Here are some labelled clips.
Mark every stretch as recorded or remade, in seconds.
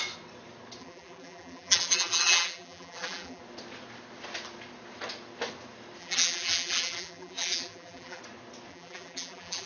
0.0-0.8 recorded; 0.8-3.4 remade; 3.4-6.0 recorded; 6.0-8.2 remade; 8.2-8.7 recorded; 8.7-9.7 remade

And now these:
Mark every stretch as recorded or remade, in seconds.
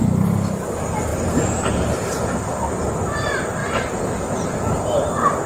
0.0-1.1 recorded; 1.1-1.7 remade; 1.7-3.6 recorded; 3.6-4.3 remade; 4.3-5.5 recorded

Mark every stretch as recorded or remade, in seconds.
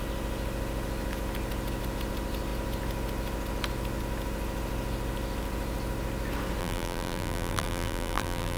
0.0-6.6 recorded; 6.6-8.6 remade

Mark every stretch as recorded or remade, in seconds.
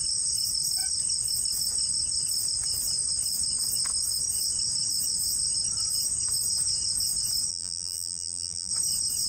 0.0-7.5 recorded; 7.5-8.7 remade; 8.7-9.3 recorded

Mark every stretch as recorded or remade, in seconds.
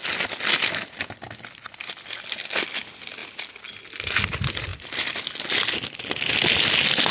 0.0-3.2 recorded; 3.2-3.7 remade; 3.7-7.1 recorded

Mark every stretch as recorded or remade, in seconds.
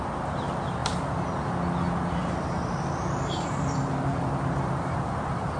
0.0-2.2 recorded; 2.2-5.1 remade; 5.1-5.6 recorded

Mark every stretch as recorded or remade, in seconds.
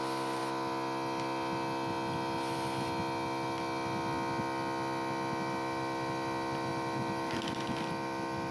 0.0-0.4 remade; 0.4-5.4 recorded; 5.4-8.5 remade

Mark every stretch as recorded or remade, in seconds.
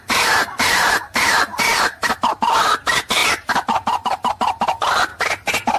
0.0-1.7 remade; 1.7-2.8 recorded; 2.8-5.1 remade; 5.1-5.8 recorded